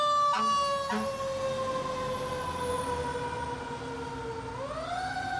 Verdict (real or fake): real